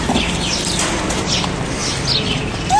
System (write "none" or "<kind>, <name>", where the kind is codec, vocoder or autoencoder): none